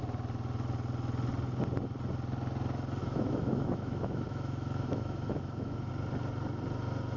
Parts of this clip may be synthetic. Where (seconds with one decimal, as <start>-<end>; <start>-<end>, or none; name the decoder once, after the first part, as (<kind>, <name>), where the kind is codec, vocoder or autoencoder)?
3.0-5.9 (autoencoder, DAC-VAE)